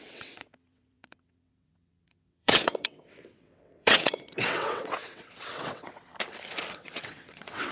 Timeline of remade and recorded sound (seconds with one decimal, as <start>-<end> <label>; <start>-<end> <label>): 0.0-6.1 remade; 6.1-6.7 recorded; 6.7-7.7 remade